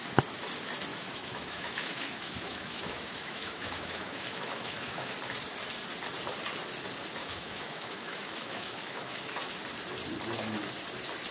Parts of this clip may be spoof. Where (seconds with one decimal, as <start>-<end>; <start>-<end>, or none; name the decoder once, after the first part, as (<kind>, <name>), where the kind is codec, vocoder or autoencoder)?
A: 0.9-5.1 (autoencoder, DAC-VAE); 7.2-9.4